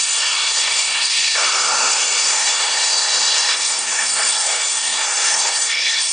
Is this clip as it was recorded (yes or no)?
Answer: no